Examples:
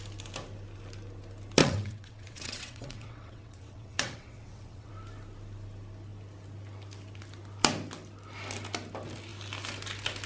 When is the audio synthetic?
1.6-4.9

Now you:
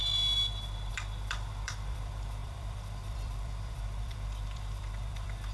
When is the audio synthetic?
0.9-5.5